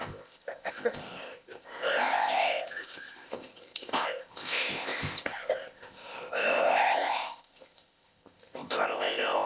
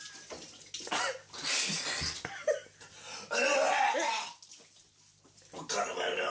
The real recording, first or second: second